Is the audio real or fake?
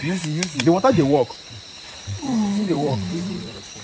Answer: fake